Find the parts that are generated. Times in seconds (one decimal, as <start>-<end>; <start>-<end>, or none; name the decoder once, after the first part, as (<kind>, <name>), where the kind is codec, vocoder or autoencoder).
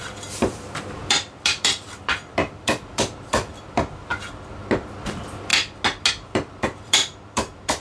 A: 0.0-4.1 (vocoder, BigVGAN v2); 5.1-5.5; 6.1-7.8